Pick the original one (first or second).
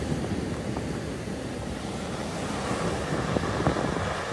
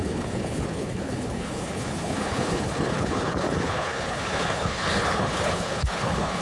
first